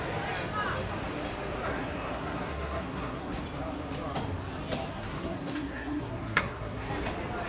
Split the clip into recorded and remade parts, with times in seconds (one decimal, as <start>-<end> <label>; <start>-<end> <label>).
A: 0.0-1.7 recorded; 1.7-3.4 remade; 3.4-4.9 recorded; 4.9-6.9 remade; 6.9-7.5 recorded